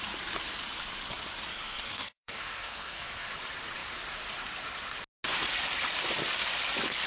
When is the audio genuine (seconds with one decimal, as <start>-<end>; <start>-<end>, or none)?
0.0-1.5; 3.3-7.1